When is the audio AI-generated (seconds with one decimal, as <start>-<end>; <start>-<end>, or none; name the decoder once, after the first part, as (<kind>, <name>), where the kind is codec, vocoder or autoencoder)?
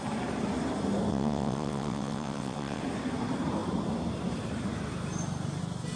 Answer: 1.1-2.8 (vocoder, WaveNeXt)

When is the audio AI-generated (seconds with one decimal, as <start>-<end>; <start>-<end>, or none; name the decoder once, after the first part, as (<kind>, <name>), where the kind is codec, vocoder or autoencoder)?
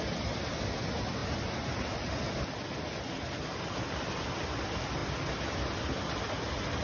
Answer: none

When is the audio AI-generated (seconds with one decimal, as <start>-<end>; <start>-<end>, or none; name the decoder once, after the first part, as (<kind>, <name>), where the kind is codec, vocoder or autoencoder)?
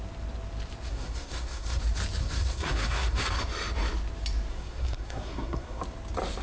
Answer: 0.9-1.8 (codec, SNAC); 2.2-3.3; 4.5-5.8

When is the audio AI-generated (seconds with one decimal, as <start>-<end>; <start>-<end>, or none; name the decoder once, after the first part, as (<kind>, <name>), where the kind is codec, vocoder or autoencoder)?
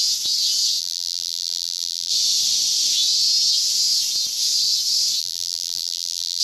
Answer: 0.8-2.1 (vocoder, BigVGAN v2); 5.2-6.4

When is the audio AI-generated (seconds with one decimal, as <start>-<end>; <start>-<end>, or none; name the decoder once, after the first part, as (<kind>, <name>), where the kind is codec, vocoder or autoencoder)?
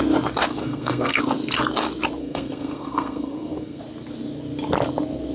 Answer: 0.6-1.2 (codec, SNAC); 2.2-3.8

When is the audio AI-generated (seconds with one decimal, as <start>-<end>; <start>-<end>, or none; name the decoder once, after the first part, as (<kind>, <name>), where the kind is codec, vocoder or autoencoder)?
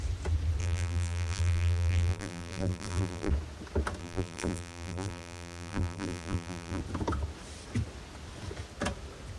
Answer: 0.6-3.3 (vocoder, BigVGAN v2); 4.0-6.8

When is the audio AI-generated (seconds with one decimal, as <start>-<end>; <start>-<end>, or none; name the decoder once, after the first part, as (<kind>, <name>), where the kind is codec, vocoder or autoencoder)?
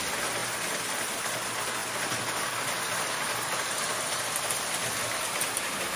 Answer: none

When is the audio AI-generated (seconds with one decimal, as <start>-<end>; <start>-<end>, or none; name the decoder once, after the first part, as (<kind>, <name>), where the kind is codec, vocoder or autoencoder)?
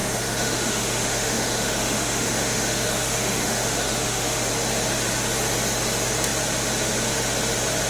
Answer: 0.0-4.5 (autoencoder, DAC-VAE)